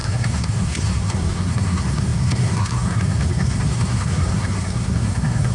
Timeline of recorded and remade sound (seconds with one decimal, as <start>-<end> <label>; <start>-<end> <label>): 0.0-5.5 remade